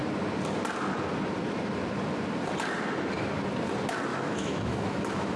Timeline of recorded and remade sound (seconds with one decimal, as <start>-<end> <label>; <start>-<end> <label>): 0.0-4.1 recorded; 4.1-5.4 remade